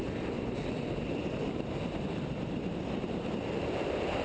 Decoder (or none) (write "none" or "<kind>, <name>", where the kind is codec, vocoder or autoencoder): none